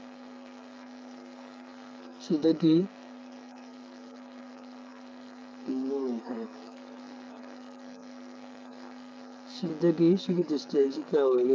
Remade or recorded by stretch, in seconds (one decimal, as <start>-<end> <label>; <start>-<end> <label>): 0.0-9.7 remade; 9.7-10.2 recorded; 10.2-11.5 remade